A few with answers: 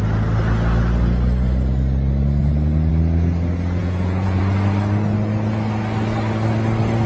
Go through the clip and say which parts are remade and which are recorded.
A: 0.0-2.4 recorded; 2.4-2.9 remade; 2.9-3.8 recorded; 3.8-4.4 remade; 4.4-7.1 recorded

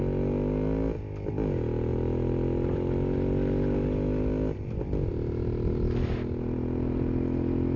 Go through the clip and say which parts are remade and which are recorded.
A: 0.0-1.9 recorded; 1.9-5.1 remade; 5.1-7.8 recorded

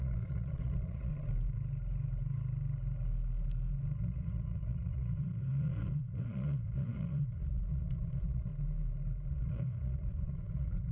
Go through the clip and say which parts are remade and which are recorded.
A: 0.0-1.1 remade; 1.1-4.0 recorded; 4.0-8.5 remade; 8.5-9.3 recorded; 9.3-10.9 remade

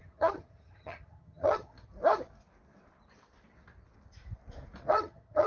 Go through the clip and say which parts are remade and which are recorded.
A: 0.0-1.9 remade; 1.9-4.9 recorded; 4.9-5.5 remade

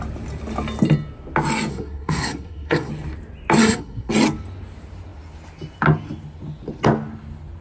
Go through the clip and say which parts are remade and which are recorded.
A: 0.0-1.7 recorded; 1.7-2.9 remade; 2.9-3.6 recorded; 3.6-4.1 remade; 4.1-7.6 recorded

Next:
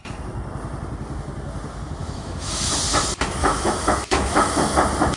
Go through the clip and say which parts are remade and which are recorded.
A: 0.0-2.0 recorded; 2.0-2.8 remade; 2.8-3.4 recorded; 3.4-4.7 remade; 4.7-5.2 recorded

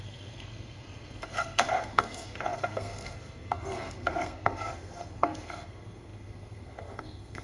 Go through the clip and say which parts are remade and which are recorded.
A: 0.0-7.4 remade